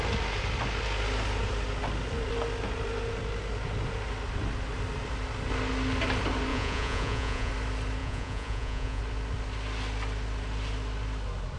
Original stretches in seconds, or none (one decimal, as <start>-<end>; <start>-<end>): 0.0-6.5; 7.5-8.0; 9.0-11.6